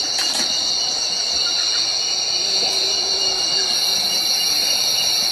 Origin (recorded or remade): recorded